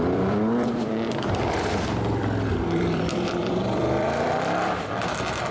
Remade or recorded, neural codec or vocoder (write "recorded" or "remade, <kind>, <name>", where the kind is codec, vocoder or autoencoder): remade, vocoder, BigVGAN v2